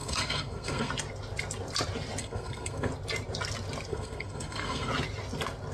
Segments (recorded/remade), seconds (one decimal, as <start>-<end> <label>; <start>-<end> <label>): 0.0-0.9 remade; 0.9-2.2 recorded; 2.2-2.9 remade; 2.9-3.9 recorded; 3.9-4.9 remade; 4.9-5.7 recorded